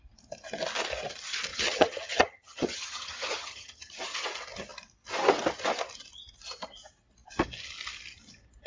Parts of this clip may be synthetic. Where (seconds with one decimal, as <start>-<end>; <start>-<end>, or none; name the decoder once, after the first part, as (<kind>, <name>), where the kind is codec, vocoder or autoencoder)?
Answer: 1.5-3.9 (vocoder, HiFi-GAN)